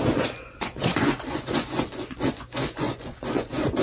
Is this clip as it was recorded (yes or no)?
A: no